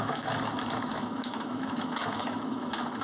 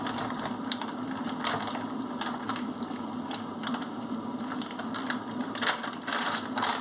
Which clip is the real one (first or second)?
second